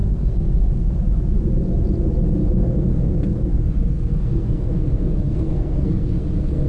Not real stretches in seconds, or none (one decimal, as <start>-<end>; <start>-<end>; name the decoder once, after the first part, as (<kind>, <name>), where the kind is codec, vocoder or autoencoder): 0.0-1.0 (codec, SNAC); 2.4-6.7